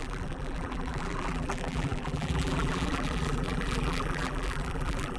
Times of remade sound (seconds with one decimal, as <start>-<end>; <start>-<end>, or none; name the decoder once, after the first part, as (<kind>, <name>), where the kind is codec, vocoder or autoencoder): 0.0-5.2 (vocoder, BigVGAN v2)